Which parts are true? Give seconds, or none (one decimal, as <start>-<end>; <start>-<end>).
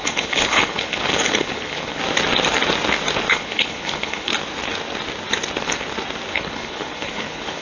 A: 2.0-3.3; 4.3-6.3